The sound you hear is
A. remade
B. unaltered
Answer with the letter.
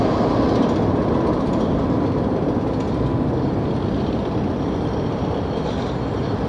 B